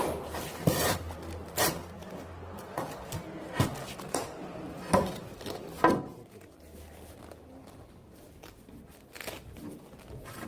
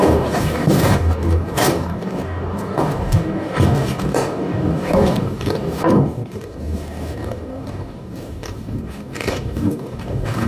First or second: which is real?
first